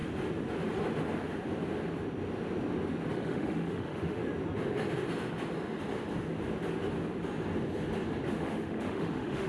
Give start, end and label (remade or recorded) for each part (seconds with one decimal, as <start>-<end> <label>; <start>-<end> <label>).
0.0-3.1 recorded; 3.1-4.2 remade; 4.2-8.3 recorded; 8.3-9.5 remade